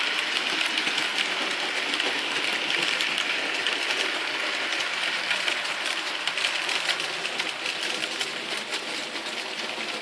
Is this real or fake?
real